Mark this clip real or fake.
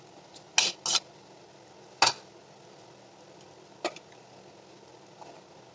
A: real